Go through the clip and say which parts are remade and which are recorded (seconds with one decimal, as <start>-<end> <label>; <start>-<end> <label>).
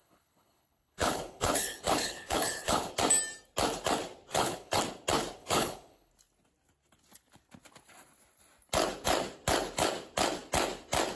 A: 0.0-2.9 remade; 2.9-4.3 recorded; 4.3-4.8 remade; 4.8-5.4 recorded; 5.4-6.1 remade; 6.1-11.2 recorded